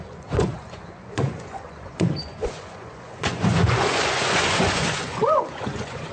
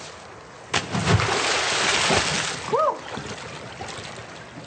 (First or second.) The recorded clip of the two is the second